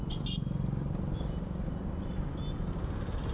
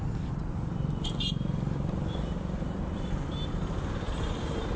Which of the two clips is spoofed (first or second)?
second